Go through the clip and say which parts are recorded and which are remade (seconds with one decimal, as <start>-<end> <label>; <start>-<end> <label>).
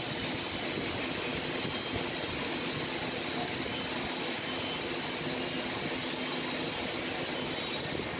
0.0-8.2 recorded